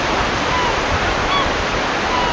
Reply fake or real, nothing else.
real